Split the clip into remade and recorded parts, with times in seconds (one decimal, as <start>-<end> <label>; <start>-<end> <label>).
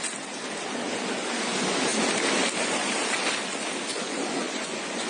0.0-3.9 recorded; 3.9-5.1 remade